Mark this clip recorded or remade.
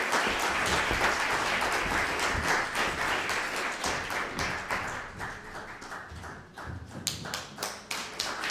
recorded